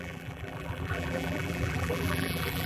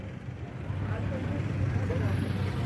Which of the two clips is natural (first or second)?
second